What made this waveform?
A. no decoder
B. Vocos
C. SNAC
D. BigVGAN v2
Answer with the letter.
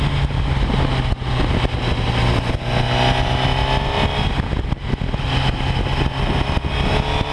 A